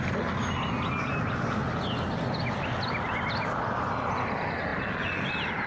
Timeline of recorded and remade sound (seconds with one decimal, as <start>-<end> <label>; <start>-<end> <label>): 0.0-5.7 recorded